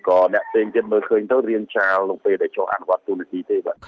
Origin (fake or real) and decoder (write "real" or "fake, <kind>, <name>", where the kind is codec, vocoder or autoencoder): real